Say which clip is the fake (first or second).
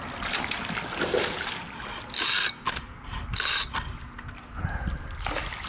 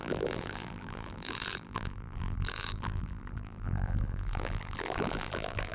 second